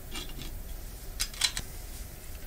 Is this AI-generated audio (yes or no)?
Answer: no